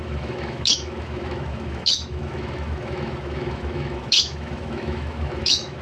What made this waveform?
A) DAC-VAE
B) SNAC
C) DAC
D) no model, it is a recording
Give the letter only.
A